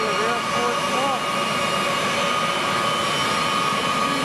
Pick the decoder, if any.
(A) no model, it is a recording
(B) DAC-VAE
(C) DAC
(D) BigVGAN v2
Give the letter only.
A